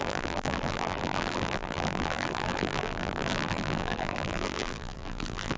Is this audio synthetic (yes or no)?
yes